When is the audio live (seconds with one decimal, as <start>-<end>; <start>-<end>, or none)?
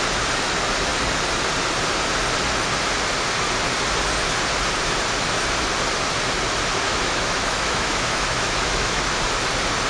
0.0-6.9; 9.0-9.9